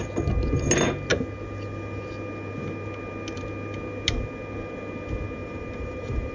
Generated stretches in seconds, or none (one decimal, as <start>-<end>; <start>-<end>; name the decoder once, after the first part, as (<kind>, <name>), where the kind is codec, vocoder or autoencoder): 5.4-6.3 (vocoder, BigVGAN v2)